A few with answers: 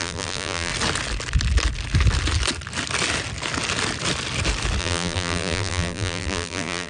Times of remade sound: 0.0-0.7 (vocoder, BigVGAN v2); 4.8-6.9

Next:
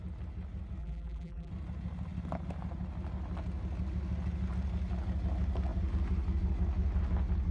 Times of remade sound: 0.8-1.5 (vocoder, BigVGAN v2)

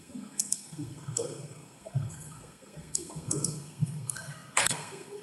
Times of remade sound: 0.0-5.2 (codec, SNAC)

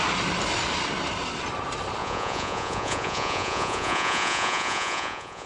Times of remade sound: 2.0-5.5 (vocoder, Vocos)

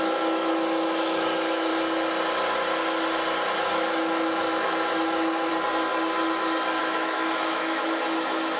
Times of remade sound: 0.0-1.7 (autoencoder, DAC-VAE); 3.6-5.5; 6.8-8.6

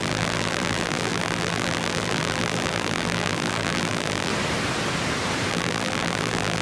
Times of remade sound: 0.0-4.3 (vocoder, BigVGAN v2); 5.5-6.6

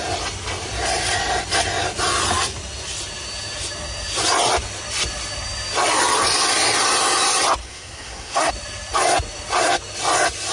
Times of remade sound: 7.6-8.5 (codec, SNAC)